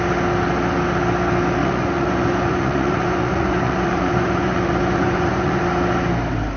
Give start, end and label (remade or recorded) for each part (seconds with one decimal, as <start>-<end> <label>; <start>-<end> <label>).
0.0-1.6 recorded; 1.6-5.6 remade; 5.6-6.6 recorded